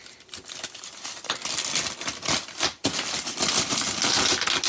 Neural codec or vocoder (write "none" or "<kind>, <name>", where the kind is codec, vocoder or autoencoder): none